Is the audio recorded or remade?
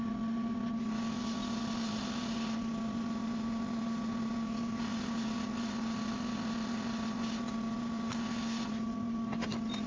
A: recorded